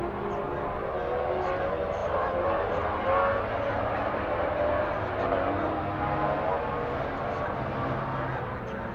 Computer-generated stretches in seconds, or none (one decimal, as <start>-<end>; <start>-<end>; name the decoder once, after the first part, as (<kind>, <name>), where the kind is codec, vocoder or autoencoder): 2.0-5.2 (vocoder, BigVGAN v2)